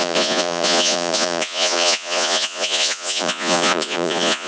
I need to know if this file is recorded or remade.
remade